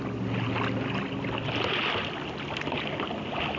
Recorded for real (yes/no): yes